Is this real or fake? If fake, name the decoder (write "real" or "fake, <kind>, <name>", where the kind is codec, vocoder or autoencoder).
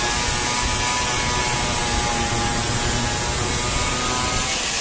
real